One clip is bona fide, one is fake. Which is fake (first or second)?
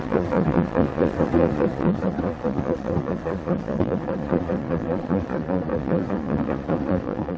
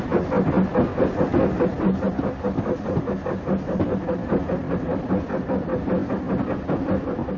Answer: first